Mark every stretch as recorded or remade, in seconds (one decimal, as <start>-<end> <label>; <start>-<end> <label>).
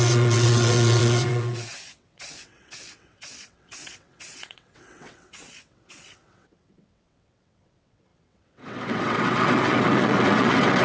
0.0-10.8 remade